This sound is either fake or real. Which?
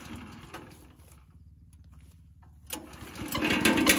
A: real